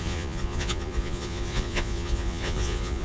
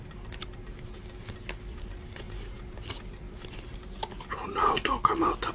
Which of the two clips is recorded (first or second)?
second